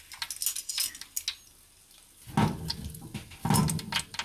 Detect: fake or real real